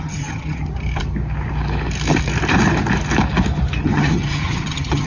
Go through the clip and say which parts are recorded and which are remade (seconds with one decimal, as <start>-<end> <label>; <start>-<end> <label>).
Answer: 0.0-0.7 remade; 0.7-3.8 recorded; 3.8-5.1 remade

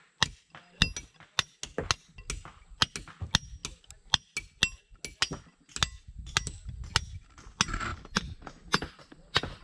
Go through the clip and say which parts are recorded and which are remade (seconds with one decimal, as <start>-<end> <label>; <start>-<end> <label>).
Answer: 0.0-9.6 recorded

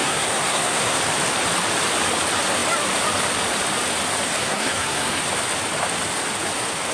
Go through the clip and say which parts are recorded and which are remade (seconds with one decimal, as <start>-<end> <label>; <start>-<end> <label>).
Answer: 0.0-1.0 remade; 1.0-4.4 recorded; 4.4-5.2 remade; 5.2-6.9 recorded

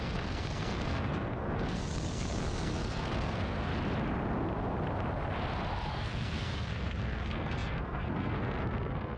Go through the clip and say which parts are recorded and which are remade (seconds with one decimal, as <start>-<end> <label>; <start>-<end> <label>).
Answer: 0.0-3.7 remade; 3.7-5.9 recorded; 5.9-9.2 remade

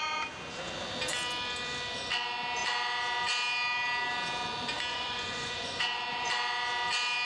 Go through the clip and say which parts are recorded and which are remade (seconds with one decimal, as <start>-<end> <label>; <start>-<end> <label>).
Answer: 0.0-4.9 recorded; 4.9-6.3 remade; 6.3-7.2 recorded

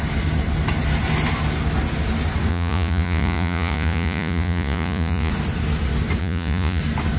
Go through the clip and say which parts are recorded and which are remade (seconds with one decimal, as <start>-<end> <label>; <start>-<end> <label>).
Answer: 0.0-2.5 recorded; 2.5-5.3 remade; 5.3-6.2 recorded; 6.2-6.8 remade; 6.8-7.2 recorded

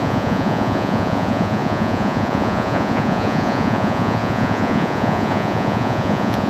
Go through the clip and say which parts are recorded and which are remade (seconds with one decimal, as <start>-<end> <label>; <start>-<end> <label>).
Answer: 0.0-6.5 remade

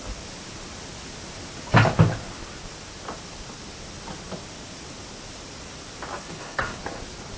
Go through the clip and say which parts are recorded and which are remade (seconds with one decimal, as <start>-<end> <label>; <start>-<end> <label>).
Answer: 0.0-6.2 recorded; 6.2-6.8 remade; 6.8-7.4 recorded